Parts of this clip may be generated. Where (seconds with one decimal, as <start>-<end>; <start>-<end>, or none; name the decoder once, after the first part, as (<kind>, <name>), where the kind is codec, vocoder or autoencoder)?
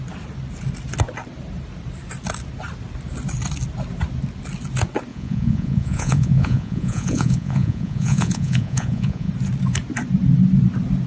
5.1-9.3 (vocoder, Vocos)